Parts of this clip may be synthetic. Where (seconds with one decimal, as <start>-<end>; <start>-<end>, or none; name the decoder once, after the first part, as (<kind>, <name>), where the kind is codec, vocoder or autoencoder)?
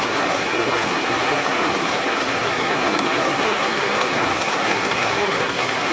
0.0-5.9 (codec, SNAC)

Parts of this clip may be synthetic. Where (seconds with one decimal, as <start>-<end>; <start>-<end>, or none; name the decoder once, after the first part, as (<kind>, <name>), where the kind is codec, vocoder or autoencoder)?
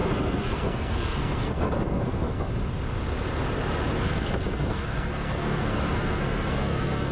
0.0-2.5 (codec, SNAC); 4.1-7.1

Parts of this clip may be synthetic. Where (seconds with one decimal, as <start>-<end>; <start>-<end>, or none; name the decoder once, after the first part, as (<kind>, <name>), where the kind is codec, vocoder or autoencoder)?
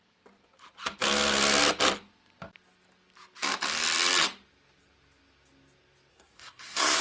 6.1-7.0 (codec, SNAC)